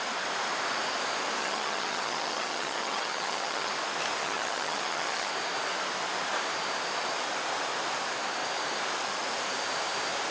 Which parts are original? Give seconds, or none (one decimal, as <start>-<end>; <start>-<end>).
0.0-1.4; 3.7-4.2; 5.3-10.3